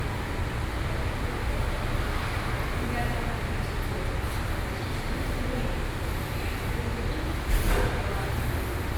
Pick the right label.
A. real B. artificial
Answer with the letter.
A